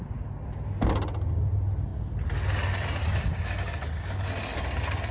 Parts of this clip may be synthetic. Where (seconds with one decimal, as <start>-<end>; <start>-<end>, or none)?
4.5-5.1